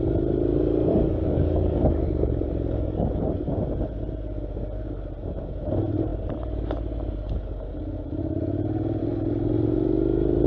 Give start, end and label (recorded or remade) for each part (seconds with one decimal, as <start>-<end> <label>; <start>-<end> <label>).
0.0-0.9 recorded; 0.9-3.4 remade; 3.4-10.5 recorded